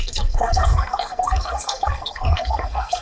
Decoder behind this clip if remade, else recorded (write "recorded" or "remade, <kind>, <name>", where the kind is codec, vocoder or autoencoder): remade, codec, SNAC